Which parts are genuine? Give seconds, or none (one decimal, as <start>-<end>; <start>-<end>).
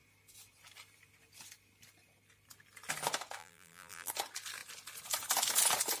0.0-3.4; 4.1-6.0